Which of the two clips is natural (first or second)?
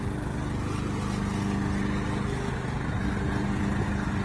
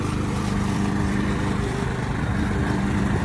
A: first